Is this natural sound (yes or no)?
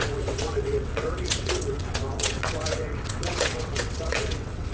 no